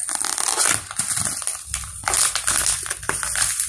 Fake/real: real